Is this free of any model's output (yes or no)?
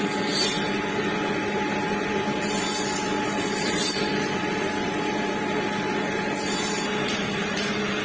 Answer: yes